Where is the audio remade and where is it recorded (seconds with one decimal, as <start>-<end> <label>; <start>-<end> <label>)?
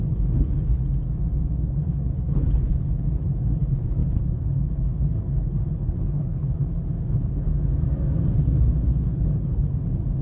0.0-0.8 remade; 0.8-1.7 recorded; 1.7-7.5 remade; 7.5-8.2 recorded; 8.2-10.2 remade